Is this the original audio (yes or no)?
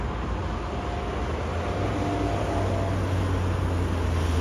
yes